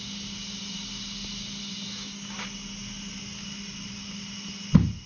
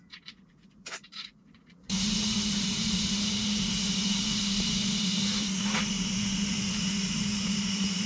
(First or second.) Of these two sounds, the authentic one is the first